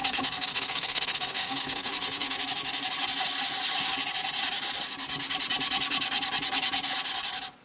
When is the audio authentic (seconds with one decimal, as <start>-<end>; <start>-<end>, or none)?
2.4-7.6